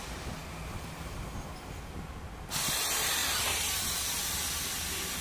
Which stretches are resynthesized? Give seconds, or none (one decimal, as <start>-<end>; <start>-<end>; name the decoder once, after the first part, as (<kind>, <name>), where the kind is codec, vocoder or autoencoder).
3.2-3.9 (vocoder, BigVGAN v2)

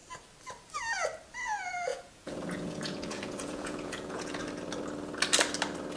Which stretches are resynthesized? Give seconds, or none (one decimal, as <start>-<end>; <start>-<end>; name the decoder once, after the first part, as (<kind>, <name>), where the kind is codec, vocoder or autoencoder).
1.9-4.4 (vocoder, Vocos)